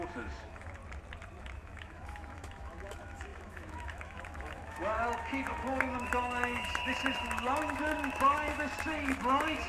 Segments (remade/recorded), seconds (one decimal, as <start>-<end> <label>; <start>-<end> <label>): 0.0-0.8 remade; 0.8-1.4 recorded; 1.4-9.7 remade